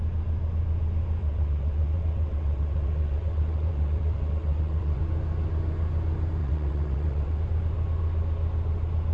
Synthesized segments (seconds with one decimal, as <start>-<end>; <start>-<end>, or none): 1.2-5.0; 6.4-7.4